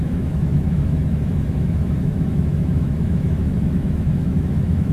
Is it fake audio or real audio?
fake